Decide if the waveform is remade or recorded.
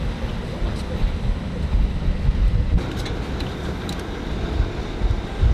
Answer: recorded